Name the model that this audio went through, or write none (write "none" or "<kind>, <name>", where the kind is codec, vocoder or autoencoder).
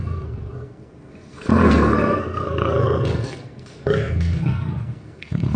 codec, SNAC